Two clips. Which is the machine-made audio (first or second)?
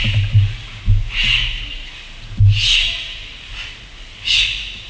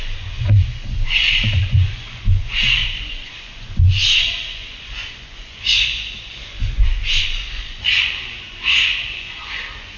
second